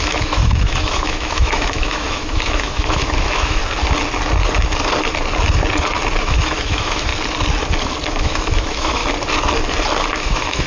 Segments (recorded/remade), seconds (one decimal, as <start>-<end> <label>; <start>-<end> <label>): 0.0-3.6 remade; 3.6-6.2 recorded; 6.2-7.1 remade; 7.1-8.1 recorded; 8.1-9.0 remade; 9.0-10.2 recorded; 10.2-10.7 remade

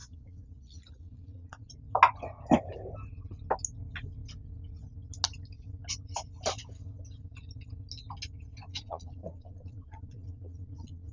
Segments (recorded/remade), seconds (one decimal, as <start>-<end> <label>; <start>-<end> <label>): 0.0-1.7 remade; 1.7-8.7 recorded; 8.7-11.1 remade

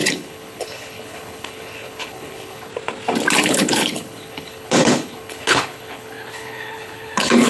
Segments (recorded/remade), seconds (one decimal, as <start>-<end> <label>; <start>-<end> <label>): 0.0-2.7 remade; 2.7-3.4 recorded; 3.4-7.5 remade

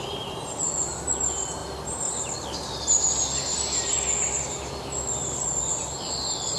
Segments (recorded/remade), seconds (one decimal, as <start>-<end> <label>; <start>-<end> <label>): 0.0-1.6 recorded; 1.6-5.6 remade; 5.6-6.6 recorded